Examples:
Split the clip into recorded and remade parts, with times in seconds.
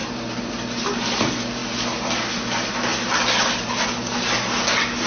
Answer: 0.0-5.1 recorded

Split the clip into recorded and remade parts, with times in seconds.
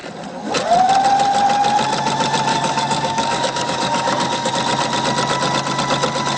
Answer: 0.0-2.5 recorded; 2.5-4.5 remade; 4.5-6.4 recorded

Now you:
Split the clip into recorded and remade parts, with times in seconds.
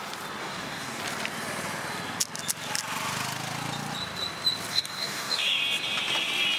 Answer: 0.0-0.4 recorded; 0.4-1.0 remade; 1.0-4.7 recorded; 4.7-5.6 remade; 5.6-6.6 recorded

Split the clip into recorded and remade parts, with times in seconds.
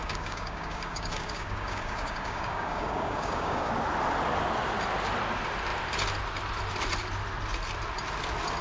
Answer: 0.0-3.7 remade; 3.7-8.6 recorded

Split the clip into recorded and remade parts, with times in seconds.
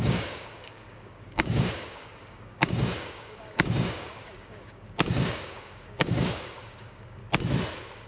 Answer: 0.0-7.2 remade; 7.2-8.1 recorded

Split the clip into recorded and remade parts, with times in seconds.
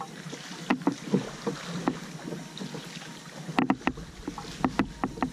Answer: 0.0-5.3 recorded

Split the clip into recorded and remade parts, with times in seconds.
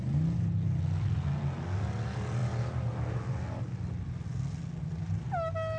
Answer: 0.0-5.8 recorded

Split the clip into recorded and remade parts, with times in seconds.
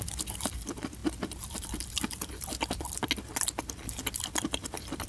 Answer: 0.0-5.1 recorded